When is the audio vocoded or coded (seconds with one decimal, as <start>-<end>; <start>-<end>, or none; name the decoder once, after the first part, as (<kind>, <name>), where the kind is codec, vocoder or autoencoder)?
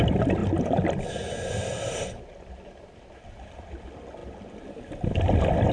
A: none